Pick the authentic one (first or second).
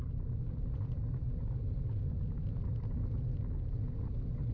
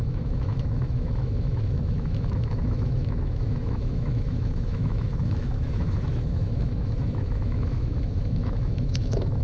first